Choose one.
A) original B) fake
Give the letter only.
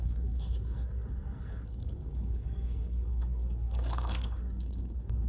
B